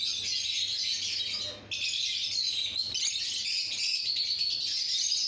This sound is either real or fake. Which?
real